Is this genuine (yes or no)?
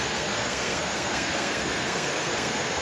no